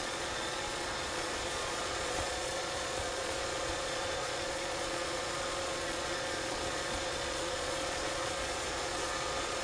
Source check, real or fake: fake